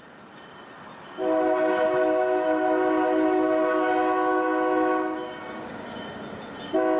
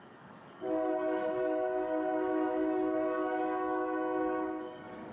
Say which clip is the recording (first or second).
first